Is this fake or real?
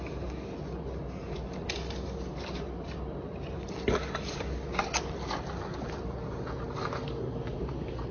real